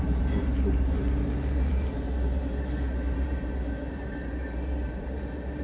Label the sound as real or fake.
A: fake